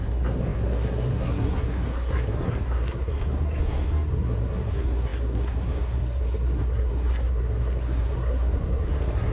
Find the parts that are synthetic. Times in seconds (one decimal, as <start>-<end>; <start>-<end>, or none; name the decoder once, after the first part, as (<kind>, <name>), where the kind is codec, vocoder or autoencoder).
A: 0.0-9.3 (codec, SNAC)